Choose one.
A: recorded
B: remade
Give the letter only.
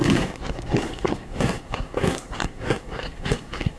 B